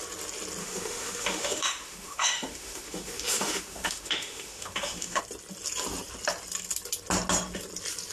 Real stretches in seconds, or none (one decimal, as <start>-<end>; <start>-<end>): 0.0-0.6; 5.2-8.1